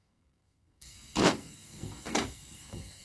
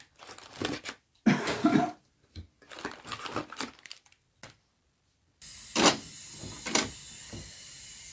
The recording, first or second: second